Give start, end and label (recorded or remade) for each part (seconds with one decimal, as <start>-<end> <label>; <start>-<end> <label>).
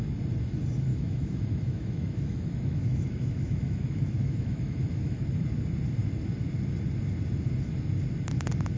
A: 0.0-0.9 recorded; 0.9-5.2 remade; 5.2-8.8 recorded